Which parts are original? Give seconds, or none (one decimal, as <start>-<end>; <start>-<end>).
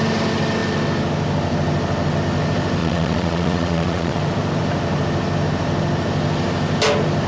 0.0-2.8; 4.2-7.3